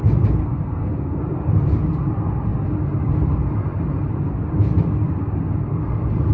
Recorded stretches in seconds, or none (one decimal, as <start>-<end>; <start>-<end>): 0.0-0.4; 1.2-6.3